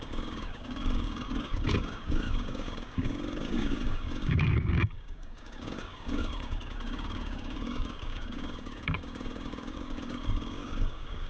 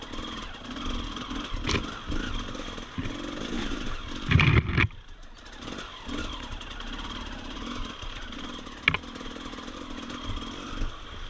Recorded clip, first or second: second